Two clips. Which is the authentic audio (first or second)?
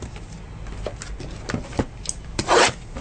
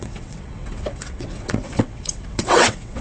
first